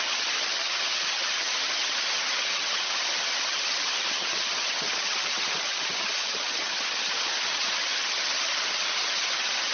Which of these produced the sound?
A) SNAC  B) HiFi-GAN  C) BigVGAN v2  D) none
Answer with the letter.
B